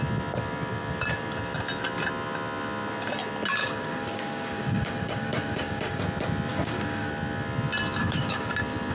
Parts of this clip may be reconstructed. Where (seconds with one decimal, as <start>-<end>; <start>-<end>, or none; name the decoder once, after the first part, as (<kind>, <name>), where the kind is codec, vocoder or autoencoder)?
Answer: 3.6-6.0 (codec, DAC); 6.5-7.1; 8.0-8.5